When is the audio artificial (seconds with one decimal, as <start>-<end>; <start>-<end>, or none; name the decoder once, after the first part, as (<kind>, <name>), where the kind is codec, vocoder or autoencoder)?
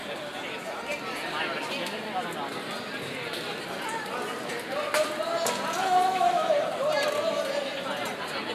5.8-6.5 (autoencoder, DAC-VAE)